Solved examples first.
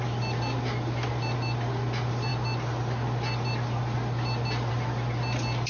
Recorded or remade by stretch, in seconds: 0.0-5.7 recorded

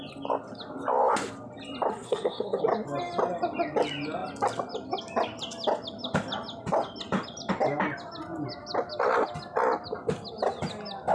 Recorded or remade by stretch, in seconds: 0.0-1.9 recorded; 1.9-2.6 remade; 2.6-11.1 recorded

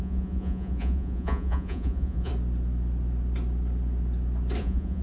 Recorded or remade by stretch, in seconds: 0.0-2.3 remade; 2.3-4.6 recorded; 4.6-5.0 remade

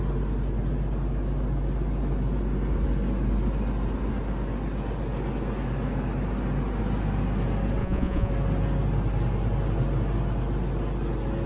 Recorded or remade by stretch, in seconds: 0.0-7.8 recorded; 7.8-8.3 remade; 8.3-11.5 recorded

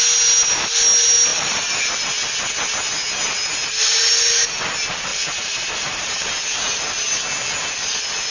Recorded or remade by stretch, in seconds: 0.0-1.3 recorded; 1.3-1.9 remade; 1.9-5.1 recorded; 5.1-6.3 remade; 6.3-8.3 recorded

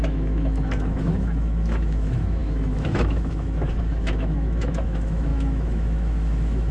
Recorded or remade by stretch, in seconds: 0.0-6.7 remade

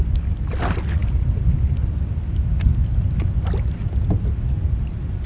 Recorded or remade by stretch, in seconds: 0.0-5.3 recorded

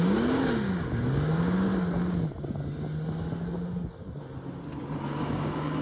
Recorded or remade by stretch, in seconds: 0.0-1.7 remade; 1.7-5.2 recorded; 5.2-5.8 remade